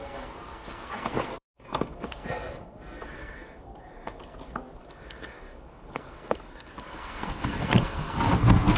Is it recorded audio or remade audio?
remade